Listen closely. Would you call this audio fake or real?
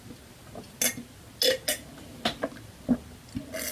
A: real